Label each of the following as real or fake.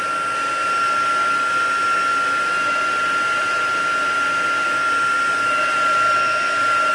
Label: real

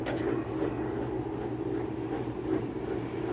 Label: real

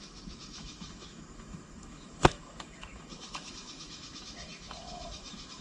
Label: fake